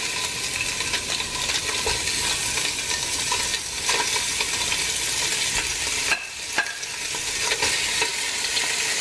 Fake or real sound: real